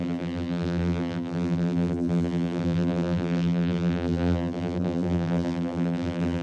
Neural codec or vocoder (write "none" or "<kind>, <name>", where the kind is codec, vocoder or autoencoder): vocoder, BigVGAN v2